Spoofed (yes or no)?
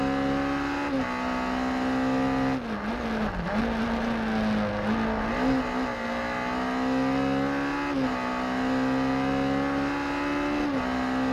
no